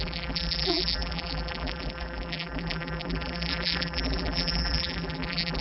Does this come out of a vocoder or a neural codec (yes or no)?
yes